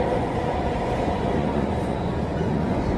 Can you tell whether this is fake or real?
fake